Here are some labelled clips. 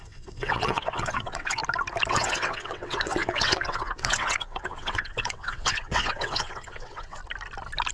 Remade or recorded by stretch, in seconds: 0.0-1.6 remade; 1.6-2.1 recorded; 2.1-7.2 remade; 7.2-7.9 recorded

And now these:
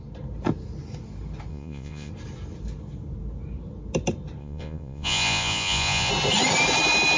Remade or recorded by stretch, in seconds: 0.0-1.5 recorded; 1.5-2.1 remade; 2.1-4.4 recorded; 4.4-6.1 remade; 6.1-7.2 recorded

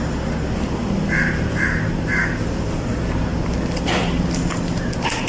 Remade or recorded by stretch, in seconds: 0.0-5.3 recorded